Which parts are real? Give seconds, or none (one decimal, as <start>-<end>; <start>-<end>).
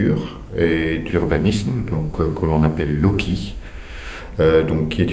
0.0-1.1; 4.2-5.1